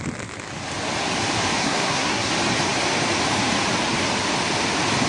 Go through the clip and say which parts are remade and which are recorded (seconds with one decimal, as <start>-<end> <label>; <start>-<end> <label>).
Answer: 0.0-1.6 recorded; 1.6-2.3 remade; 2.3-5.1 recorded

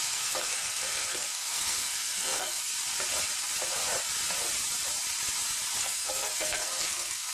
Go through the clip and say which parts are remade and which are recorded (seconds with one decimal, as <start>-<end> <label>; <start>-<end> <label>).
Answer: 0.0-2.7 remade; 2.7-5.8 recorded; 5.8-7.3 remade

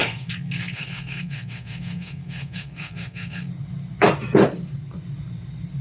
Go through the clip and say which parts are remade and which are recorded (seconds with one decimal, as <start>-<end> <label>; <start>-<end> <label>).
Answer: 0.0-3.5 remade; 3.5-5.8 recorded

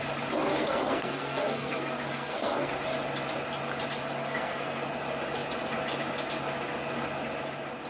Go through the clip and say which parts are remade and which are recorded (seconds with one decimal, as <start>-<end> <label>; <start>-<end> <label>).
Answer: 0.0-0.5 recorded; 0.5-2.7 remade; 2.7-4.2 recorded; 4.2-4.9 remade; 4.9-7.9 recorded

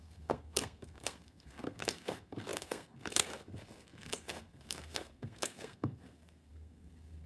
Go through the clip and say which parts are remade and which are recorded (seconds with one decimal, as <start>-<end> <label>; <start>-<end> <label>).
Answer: 0.0-7.3 remade